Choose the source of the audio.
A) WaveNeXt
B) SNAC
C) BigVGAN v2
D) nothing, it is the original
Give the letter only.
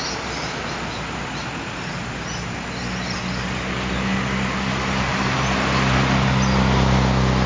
D